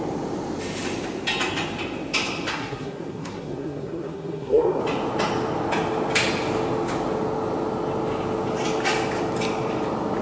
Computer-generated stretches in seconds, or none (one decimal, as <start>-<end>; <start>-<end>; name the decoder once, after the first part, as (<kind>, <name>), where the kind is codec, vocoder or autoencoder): 2.5-4.8 (codec, SNAC)